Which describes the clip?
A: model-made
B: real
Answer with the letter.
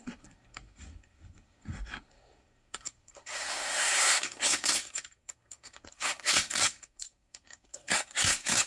A